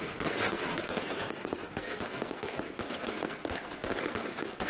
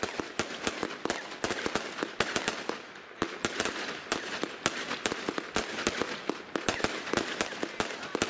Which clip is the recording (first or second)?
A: second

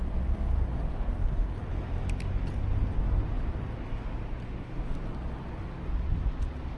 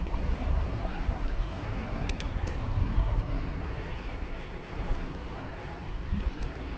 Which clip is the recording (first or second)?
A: first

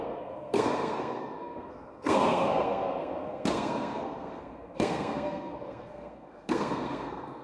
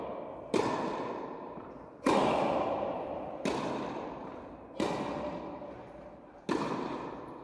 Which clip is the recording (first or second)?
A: second